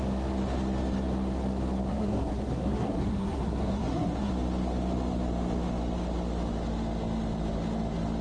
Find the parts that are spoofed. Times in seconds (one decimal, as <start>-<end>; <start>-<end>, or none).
1.9-4.3